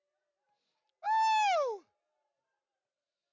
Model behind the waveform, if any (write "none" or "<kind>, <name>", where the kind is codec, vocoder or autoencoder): none